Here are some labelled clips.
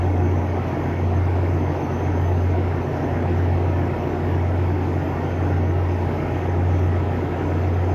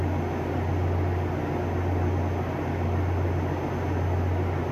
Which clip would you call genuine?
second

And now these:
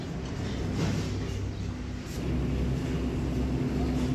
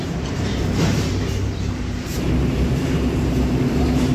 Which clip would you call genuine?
first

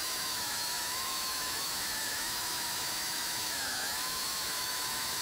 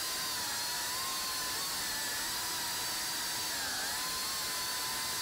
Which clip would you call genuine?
second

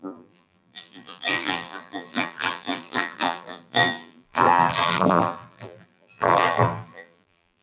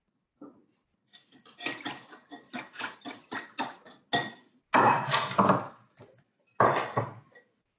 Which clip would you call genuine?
second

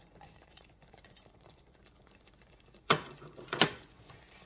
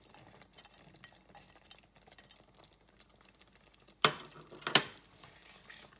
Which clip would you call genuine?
second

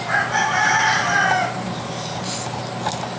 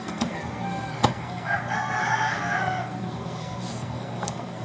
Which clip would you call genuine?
first